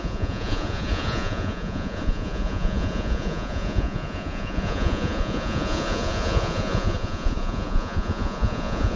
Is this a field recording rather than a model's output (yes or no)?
no